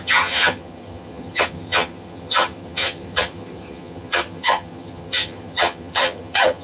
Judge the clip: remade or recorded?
remade